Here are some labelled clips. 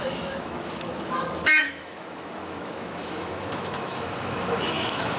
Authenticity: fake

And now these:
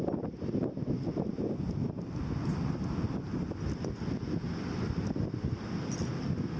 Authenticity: real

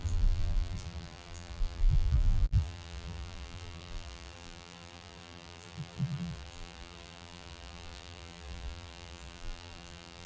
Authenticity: fake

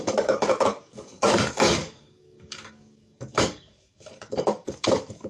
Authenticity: fake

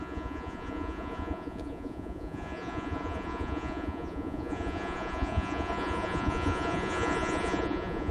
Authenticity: fake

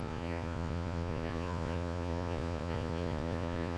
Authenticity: fake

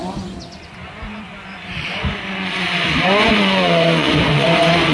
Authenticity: fake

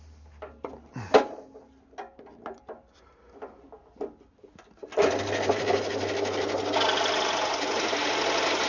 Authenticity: real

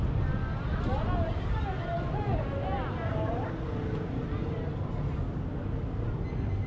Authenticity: real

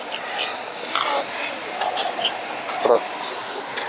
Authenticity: real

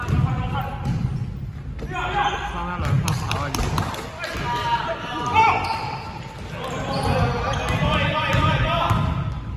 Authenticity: real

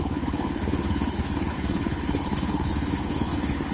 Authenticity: fake